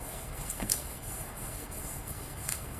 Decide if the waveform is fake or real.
fake